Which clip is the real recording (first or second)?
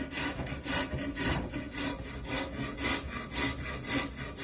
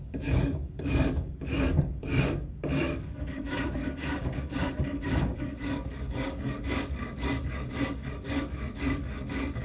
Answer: first